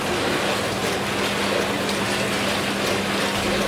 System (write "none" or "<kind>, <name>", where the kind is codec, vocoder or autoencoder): none